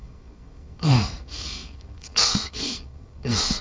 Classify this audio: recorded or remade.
remade